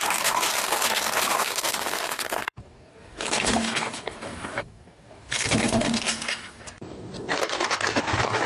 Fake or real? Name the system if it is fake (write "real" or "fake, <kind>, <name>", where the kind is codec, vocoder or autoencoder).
fake, codec, DAC